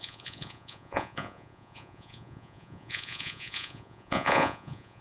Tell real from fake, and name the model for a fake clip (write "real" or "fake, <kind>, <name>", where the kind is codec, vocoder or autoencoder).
fake, vocoder, Vocos